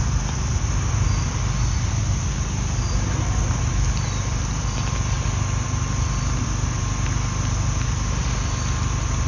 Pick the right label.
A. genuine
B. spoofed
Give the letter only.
A